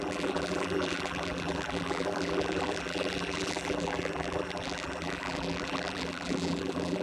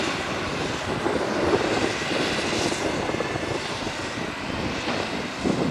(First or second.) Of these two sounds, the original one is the second